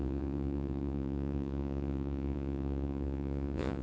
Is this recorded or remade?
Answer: remade